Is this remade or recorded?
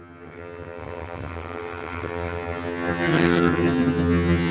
remade